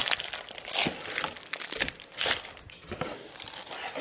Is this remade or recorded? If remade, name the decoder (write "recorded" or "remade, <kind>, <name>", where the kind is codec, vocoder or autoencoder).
recorded